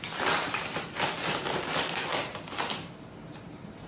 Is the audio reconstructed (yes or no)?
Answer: no